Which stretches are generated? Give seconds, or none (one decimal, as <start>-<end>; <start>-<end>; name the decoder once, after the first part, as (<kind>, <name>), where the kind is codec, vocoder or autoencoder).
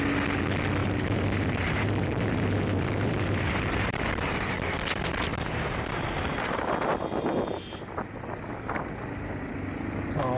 0.8-4.4 (vocoder, BigVGAN v2); 5.3-6.7